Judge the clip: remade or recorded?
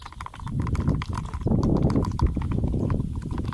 recorded